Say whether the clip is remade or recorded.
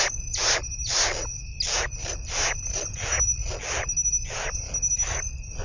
recorded